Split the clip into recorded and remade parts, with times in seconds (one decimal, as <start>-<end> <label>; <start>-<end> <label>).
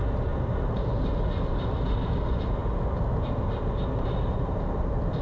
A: 0.0-5.2 recorded